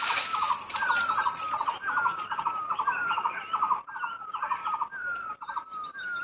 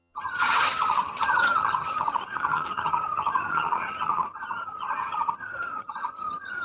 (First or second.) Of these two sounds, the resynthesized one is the second